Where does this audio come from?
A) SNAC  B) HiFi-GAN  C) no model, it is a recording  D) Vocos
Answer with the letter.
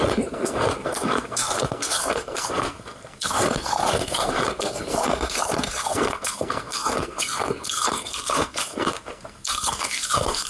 A